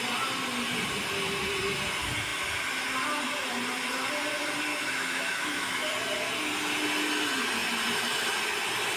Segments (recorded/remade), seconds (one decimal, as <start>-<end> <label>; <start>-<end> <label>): 0.0-4.7 recorded; 4.7-5.8 remade; 5.8-9.0 recorded